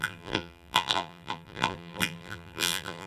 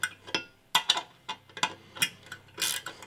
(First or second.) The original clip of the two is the second